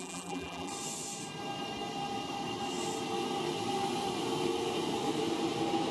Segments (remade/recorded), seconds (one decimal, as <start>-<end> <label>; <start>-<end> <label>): 0.0-0.7 remade; 0.7-5.9 recorded